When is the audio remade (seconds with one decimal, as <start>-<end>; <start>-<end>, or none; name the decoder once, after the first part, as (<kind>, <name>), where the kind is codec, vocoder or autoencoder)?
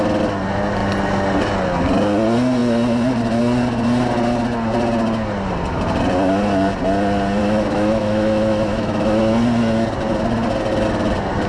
7.4-9.2 (autoencoder, DAC-VAE)